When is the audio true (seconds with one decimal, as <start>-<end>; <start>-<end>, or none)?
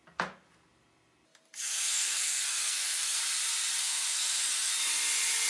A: 0.0-1.6; 3.2-3.8; 4.7-5.5